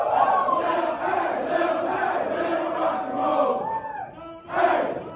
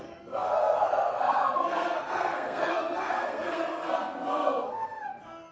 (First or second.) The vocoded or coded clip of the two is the second